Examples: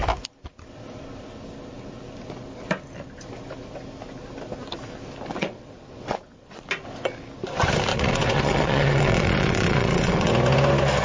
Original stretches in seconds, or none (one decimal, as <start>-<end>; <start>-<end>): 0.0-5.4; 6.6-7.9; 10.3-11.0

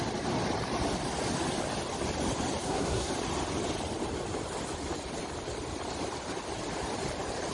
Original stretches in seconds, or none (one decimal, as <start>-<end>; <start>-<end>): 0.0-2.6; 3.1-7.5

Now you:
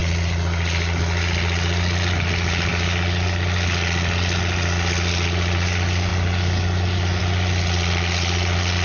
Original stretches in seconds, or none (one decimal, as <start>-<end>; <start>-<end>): 0.0-8.8

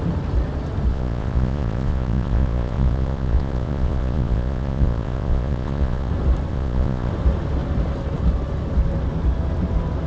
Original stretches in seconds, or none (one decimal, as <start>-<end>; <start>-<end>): 0.0-0.9; 6.1-6.5; 7.1-10.1